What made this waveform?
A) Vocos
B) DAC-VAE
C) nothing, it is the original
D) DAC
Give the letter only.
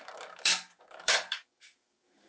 D